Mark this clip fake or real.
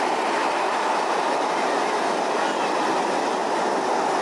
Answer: real